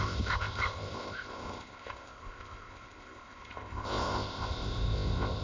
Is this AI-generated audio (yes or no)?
yes